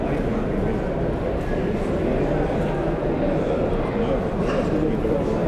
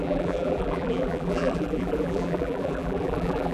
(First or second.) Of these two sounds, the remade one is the second